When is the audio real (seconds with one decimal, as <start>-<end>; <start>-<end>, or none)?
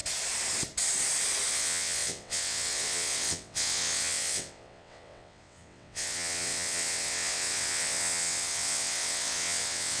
0.0-1.5